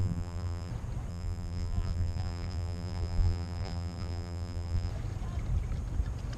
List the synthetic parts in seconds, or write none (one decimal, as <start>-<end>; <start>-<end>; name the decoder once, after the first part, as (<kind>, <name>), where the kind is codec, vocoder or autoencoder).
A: 0.0-0.7 (vocoder, BigVGAN v2); 1.1-4.9